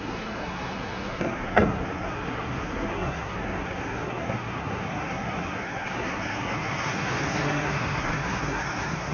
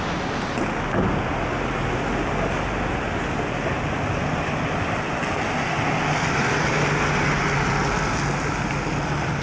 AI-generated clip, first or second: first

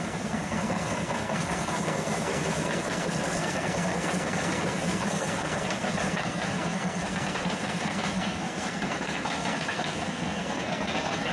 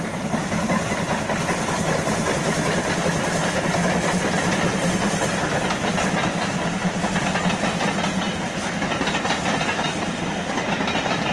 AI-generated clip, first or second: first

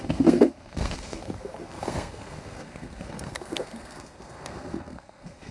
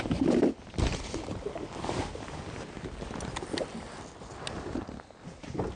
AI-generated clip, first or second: first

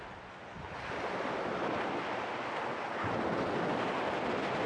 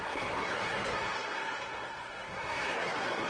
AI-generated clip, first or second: second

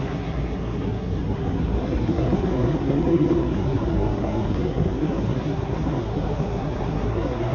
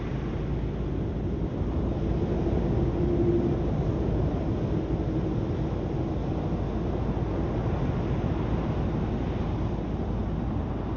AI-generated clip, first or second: first